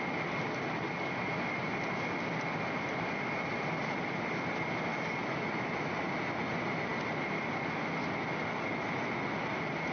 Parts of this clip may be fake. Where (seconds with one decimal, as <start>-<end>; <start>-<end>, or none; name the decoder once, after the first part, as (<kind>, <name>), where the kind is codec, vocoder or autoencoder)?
none